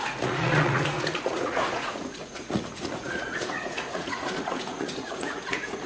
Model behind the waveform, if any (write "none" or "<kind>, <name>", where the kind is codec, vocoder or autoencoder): vocoder, Vocos